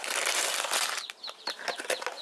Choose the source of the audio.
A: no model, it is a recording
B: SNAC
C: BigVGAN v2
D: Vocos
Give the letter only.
A